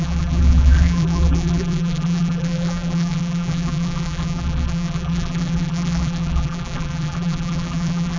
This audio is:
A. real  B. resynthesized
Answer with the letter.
B